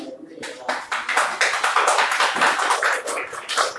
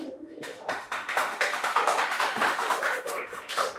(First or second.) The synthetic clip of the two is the second